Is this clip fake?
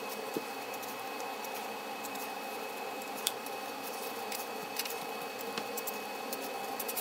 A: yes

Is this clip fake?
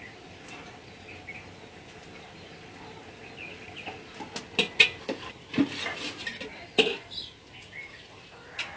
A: no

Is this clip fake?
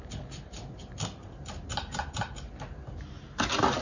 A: no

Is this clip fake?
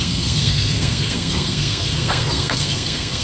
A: yes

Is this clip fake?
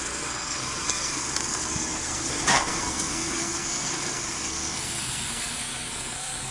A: yes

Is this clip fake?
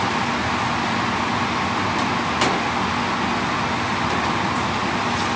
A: no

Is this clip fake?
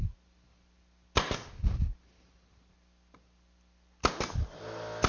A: no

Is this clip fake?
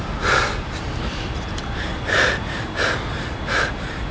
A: no